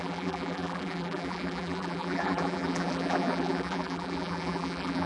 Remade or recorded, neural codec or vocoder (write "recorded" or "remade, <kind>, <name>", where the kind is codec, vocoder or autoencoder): remade, vocoder, BigVGAN v2